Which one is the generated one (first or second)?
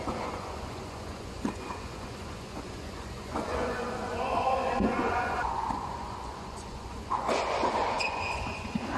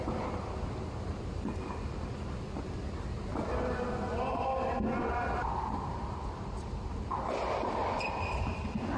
first